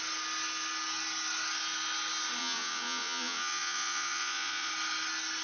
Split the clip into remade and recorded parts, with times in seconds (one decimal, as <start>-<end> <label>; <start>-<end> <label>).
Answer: 0.0-2.4 recorded; 2.4-4.7 remade; 4.7-5.4 recorded